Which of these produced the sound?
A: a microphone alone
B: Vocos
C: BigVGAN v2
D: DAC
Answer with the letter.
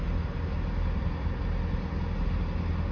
A